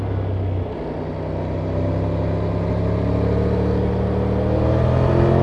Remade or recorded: recorded